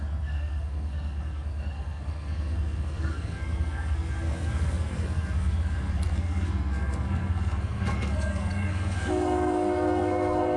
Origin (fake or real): fake